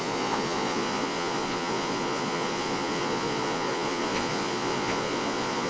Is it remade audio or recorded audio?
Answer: remade